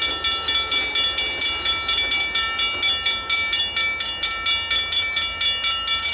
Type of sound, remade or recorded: recorded